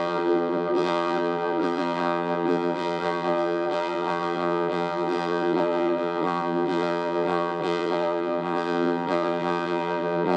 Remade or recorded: remade